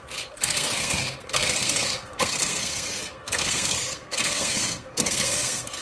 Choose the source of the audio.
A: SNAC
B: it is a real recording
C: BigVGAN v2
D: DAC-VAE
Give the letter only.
A